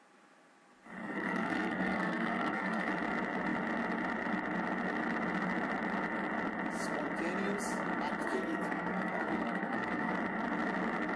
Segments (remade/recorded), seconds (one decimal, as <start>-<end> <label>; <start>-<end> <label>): 0.0-1.0 recorded; 1.0-2.9 remade; 2.9-8.2 recorded; 8.2-10.1 remade; 10.1-11.2 recorded